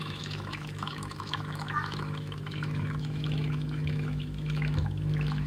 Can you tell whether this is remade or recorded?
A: remade